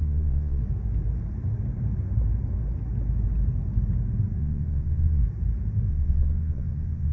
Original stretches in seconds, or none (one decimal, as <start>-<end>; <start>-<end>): 0.6-4.4; 5.2-5.9